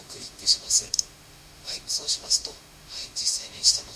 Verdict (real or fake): fake